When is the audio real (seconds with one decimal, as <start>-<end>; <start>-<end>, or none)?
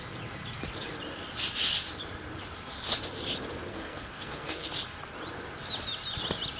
0.0-3.7; 4.7-6.6